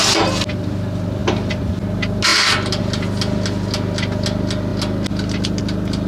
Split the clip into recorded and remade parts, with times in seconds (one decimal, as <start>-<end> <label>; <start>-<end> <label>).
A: 0.0-6.1 recorded